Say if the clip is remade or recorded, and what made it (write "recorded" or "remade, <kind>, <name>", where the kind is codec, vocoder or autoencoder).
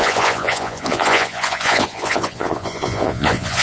remade, vocoder, Vocos